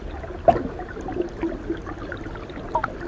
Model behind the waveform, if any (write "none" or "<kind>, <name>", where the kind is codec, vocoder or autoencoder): none